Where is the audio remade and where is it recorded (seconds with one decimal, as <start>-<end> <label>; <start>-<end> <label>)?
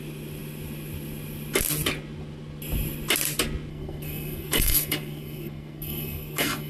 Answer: 0.0-3.7 recorded; 3.7-6.7 remade